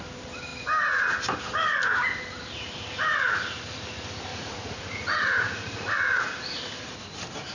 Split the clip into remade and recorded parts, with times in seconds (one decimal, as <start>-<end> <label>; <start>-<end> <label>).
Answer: 0.0-4.3 recorded; 4.3-5.9 remade; 5.9-7.5 recorded